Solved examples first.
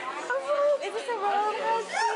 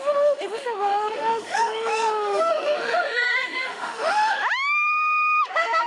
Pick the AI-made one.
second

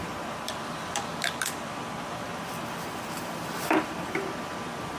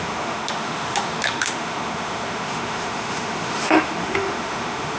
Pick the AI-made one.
second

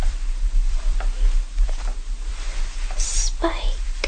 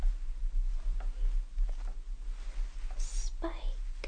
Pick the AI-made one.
first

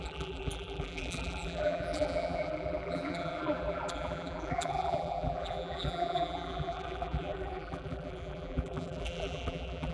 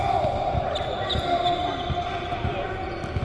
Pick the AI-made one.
first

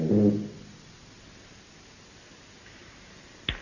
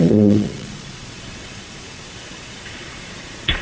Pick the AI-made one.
second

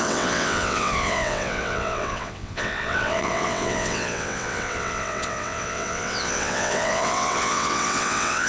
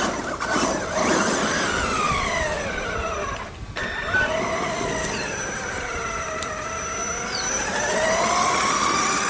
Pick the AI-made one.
first